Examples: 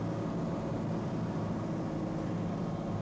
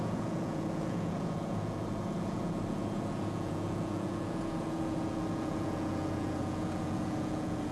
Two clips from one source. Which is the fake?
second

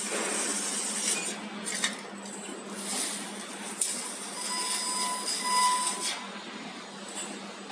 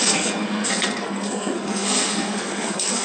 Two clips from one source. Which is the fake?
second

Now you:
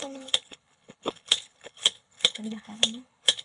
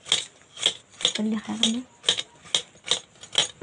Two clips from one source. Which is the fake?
first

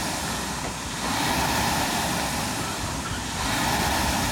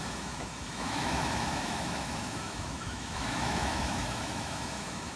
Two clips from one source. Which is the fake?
second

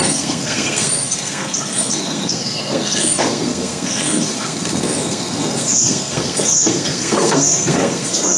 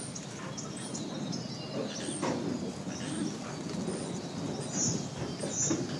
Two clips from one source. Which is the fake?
first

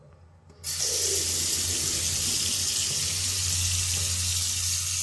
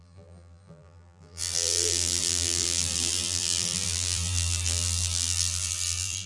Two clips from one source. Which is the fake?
second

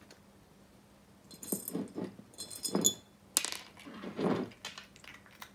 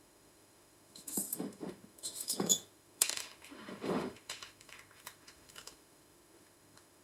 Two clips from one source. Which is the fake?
second